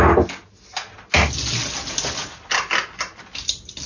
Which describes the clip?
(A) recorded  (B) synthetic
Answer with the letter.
A